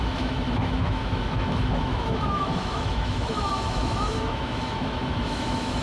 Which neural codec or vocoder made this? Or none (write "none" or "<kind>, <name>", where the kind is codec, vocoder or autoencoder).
autoencoder, DAC-VAE